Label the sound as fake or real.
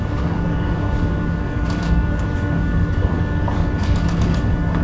fake